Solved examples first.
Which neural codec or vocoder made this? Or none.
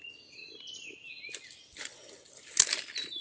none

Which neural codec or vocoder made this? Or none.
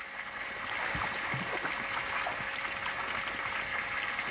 none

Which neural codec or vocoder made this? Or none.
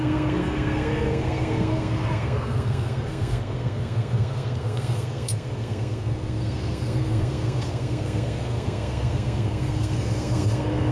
codec, SNAC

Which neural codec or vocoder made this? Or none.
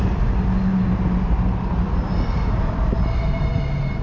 none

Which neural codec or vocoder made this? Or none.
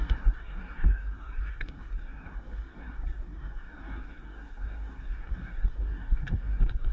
codec, SNAC